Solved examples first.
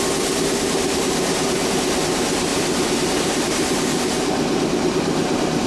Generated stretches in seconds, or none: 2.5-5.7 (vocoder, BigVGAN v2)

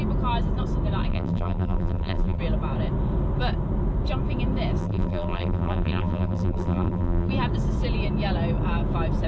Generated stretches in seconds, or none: 1.1-2.4 (vocoder, BigVGAN v2); 4.8-7.3

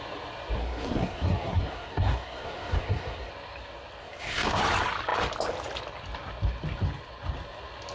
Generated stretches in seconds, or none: 0.6-3.3 (codec, SNAC); 4.0-4.6

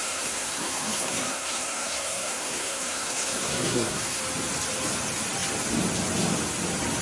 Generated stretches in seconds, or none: 0.0-4.2 (codec, SNAC)

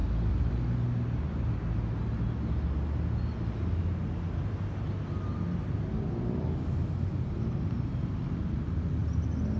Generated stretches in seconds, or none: none